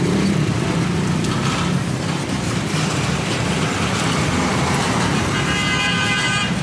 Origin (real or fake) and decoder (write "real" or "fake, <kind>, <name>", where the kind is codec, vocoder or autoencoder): fake, vocoder, BigVGAN v2